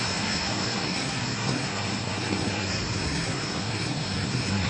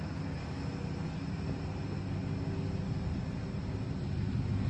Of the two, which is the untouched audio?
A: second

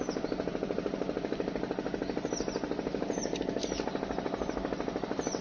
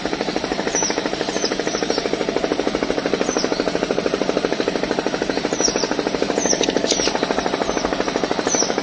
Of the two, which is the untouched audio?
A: first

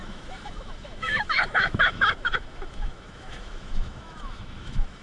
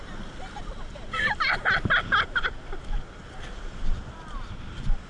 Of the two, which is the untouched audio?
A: second